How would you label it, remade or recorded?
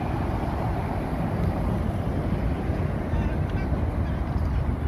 recorded